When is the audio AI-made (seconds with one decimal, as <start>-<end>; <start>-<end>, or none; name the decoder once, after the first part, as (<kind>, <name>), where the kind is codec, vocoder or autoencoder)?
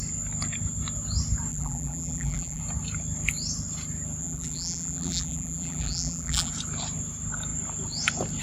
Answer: 1.5-2.6 (vocoder, BigVGAN v2); 4.2-6.5